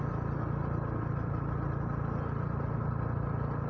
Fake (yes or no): no